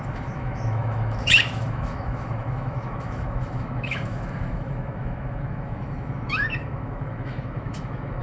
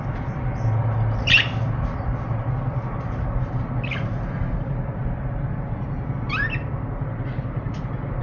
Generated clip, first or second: first